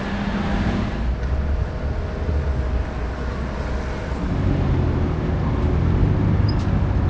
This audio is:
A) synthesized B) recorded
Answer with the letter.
B